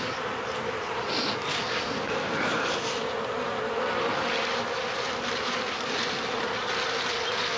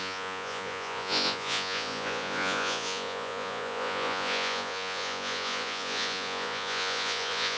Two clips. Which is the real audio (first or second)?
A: first